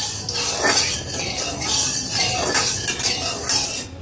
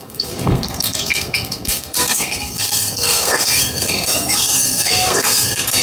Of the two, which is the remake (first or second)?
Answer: second